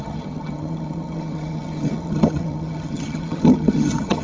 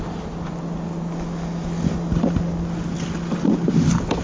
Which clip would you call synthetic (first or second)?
first